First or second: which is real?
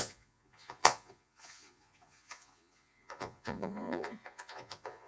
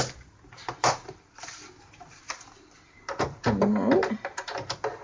second